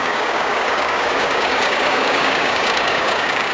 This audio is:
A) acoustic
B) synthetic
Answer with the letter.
B